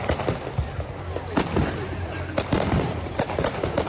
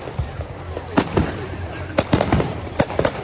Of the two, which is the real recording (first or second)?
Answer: first